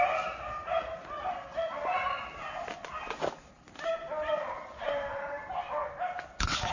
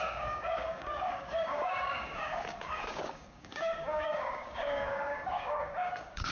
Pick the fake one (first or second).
second